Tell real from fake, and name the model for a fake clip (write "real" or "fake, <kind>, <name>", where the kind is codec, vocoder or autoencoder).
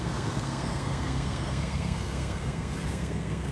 fake, codec, SNAC